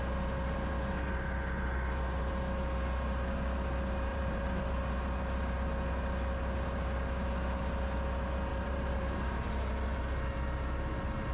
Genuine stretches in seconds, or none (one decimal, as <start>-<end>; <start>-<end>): 0.0-4.1; 4.6-8.5; 9.5-11.3